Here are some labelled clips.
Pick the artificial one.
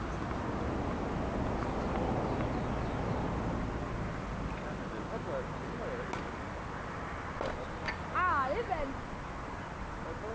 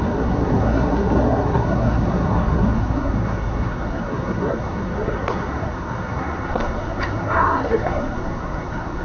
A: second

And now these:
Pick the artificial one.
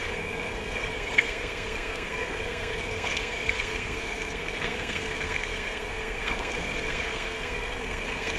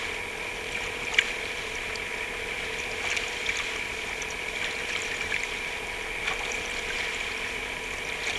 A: first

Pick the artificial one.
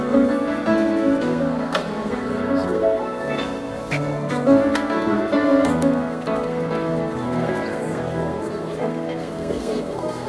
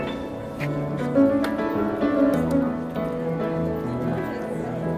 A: first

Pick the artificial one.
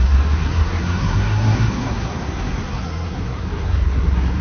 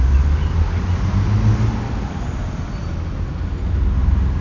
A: first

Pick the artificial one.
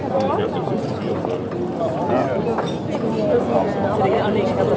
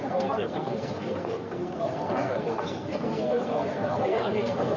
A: second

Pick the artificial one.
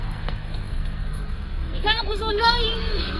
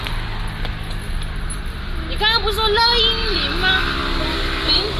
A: first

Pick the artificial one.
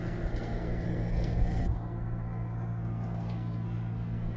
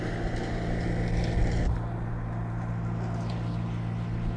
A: first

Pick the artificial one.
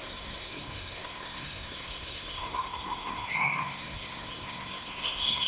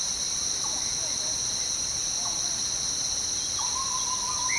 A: first